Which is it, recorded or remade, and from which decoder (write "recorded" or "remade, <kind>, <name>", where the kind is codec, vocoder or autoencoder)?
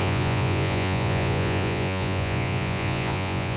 remade, vocoder, Vocos